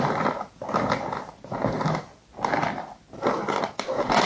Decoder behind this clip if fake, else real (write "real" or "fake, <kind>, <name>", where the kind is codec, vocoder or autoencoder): real